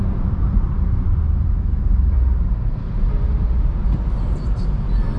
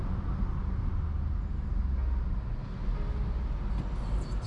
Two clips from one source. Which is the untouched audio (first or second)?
second